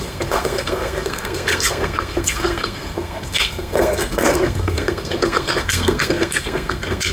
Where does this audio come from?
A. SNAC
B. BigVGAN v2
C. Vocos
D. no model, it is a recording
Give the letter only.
A